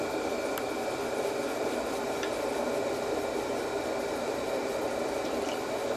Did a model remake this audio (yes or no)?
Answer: no